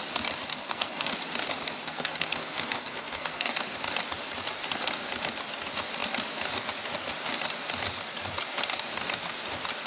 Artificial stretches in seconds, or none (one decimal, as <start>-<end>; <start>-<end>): 0.5-1.1; 1.8-3.5